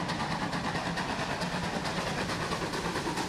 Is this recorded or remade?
recorded